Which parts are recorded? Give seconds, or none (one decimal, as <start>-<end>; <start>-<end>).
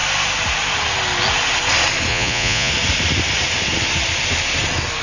0.0-2.1; 2.7-5.0